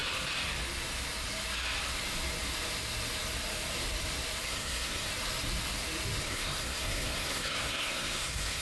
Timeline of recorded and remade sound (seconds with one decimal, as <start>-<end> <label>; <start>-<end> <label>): 0.0-4.4 recorded; 4.4-5.1 remade; 5.1-6.2 recorded; 6.2-8.6 remade